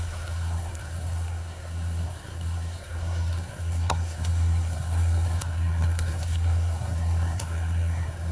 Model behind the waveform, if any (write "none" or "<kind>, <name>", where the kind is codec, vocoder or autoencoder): codec, SNAC